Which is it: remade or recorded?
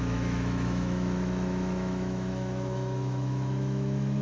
remade